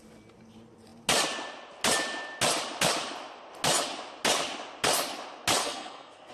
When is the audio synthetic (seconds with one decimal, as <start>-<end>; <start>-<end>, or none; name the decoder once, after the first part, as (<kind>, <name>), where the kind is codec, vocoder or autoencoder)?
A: 5.6-6.3 (codec, SNAC)